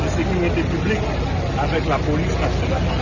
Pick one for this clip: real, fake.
real